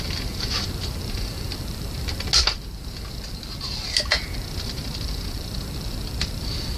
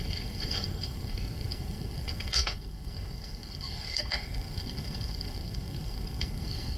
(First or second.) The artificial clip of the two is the second